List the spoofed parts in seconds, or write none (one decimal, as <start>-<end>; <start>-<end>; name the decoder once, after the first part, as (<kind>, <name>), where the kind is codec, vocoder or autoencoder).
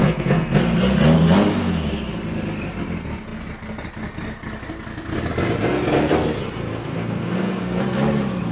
0.0-0.6 (codec, SNAC); 6.8-7.8